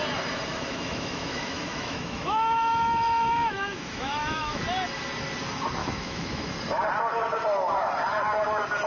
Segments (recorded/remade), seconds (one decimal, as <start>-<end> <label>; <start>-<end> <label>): 0.0-0.5 recorded; 0.5-4.6 remade; 4.6-5.8 recorded; 5.8-6.5 remade; 6.5-8.9 recorded